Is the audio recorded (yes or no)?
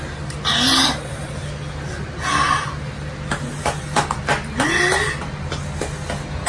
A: yes